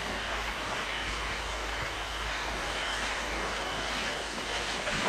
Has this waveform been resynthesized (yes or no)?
yes